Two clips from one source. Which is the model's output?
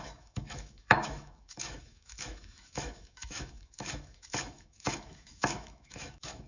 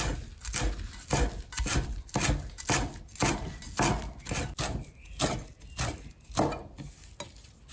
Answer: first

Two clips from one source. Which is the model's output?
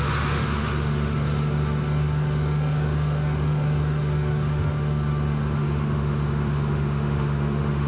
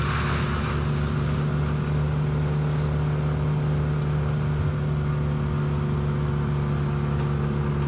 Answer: first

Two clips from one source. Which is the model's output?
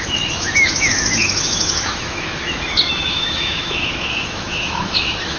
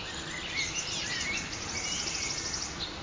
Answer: first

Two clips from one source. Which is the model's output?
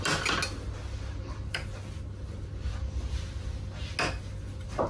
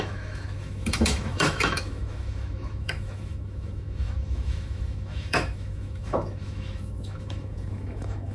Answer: second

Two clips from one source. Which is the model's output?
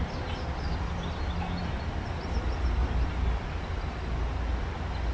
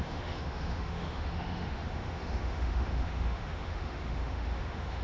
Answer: second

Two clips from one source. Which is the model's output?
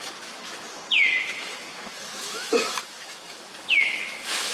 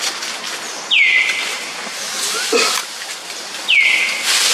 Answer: first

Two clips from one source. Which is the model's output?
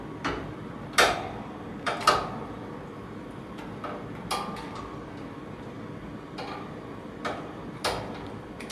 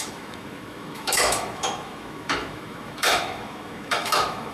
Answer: second